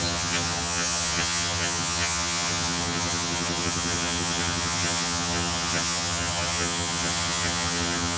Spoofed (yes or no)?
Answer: yes